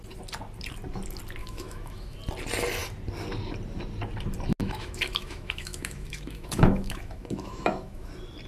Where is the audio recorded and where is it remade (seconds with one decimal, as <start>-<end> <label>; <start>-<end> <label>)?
0.0-1.4 recorded; 1.4-2.2 remade; 2.2-4.6 recorded; 4.6-8.1 remade; 8.1-8.5 recorded